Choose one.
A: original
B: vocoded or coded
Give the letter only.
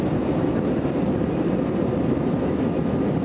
B